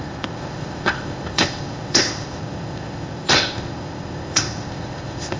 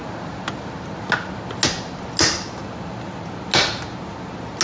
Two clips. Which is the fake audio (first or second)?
first